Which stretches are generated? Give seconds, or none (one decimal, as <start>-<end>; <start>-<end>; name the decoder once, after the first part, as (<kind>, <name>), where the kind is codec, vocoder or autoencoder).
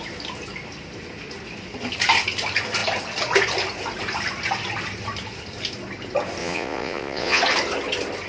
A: 6.4-7.4 (vocoder, Vocos)